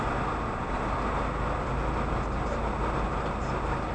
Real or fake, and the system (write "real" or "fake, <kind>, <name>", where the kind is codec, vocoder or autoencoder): real